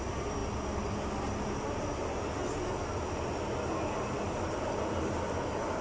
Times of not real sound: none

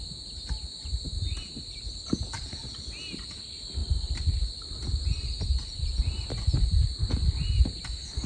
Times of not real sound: 3.8-4.3 (vocoder, BigVGAN v2)

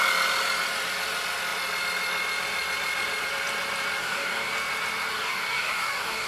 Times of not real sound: 4.0-4.5 (codec, DAC); 5.1-6.3

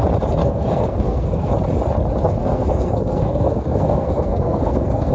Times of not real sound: 0.4-1.5 (codec, SNAC); 2.4-5.1